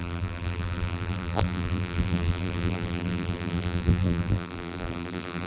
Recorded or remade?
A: remade